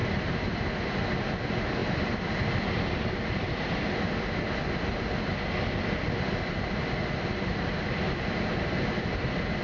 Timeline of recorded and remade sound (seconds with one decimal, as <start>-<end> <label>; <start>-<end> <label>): 0.0-0.5 remade; 0.5-9.6 recorded